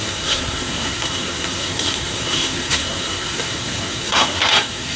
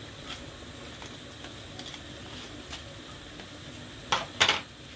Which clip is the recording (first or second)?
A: second